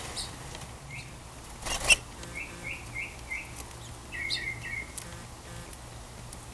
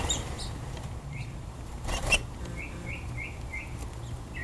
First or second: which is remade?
second